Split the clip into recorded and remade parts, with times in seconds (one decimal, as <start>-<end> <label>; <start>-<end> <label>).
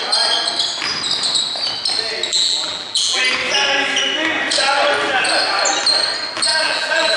0.0-2.3 recorded; 2.3-3.2 remade; 3.2-6.5 recorded; 6.5-7.2 remade